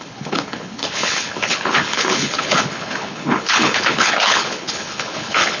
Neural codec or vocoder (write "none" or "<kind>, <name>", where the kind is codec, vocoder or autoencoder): codec, HILCodec